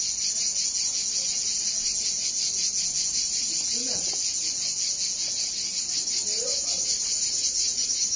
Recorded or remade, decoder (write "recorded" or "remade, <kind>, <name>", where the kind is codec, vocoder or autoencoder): recorded